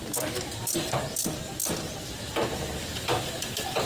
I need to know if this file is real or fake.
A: real